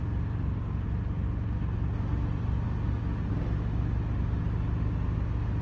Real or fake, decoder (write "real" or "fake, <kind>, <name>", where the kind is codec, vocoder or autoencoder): real